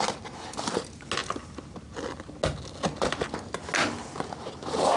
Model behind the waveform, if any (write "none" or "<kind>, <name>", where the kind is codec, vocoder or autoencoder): none